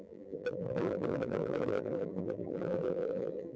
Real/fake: fake